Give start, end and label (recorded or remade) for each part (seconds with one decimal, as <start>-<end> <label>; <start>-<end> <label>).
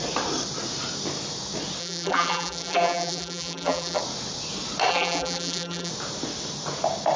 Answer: 0.0-1.8 recorded; 1.8-4.0 remade; 4.0-4.9 recorded; 4.9-5.9 remade; 5.9-7.2 recorded